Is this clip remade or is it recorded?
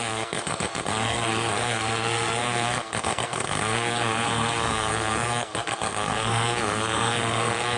remade